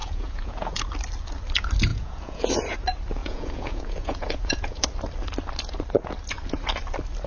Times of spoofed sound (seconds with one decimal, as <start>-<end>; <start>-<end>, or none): 0.0-0.8; 1.9-2.5; 3.2-4.8